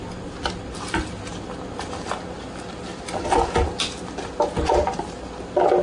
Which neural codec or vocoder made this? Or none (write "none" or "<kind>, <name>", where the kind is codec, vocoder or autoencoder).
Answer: none